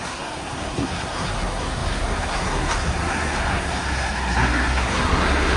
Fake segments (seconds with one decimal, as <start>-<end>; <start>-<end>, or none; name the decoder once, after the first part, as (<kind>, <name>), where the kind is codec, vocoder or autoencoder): 0.0-5.6 (codec, SNAC)